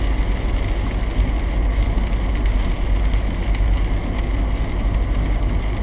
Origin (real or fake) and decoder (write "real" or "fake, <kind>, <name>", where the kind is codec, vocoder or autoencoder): real